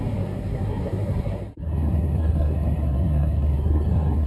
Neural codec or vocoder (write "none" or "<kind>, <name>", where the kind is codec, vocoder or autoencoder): codec, SNAC